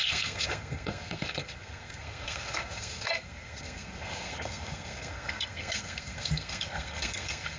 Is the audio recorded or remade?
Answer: remade